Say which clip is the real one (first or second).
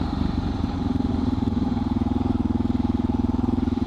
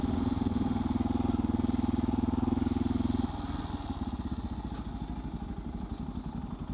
second